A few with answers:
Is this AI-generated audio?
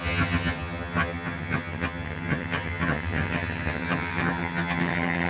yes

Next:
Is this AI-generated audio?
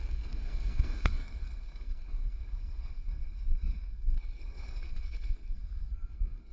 yes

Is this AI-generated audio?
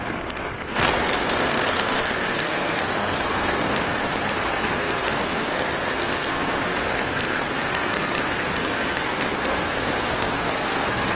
yes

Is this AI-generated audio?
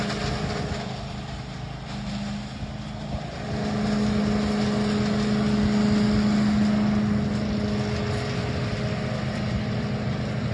no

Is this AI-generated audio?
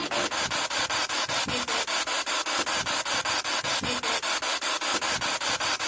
no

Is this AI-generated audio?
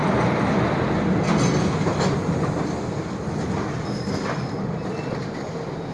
no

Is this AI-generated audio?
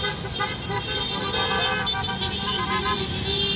no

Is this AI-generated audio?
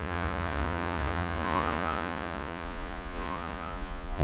yes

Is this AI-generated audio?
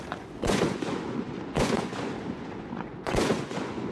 yes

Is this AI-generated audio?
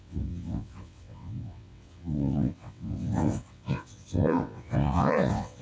yes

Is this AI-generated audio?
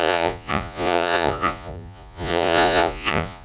yes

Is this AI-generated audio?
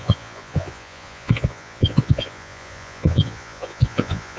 yes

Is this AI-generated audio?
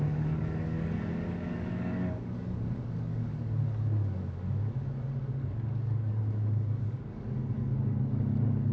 yes